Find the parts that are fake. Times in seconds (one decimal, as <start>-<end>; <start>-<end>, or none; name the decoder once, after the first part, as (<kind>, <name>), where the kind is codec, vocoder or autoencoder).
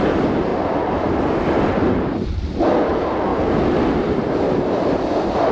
0.0-3.3 (vocoder, BigVGAN v2); 4.0-5.5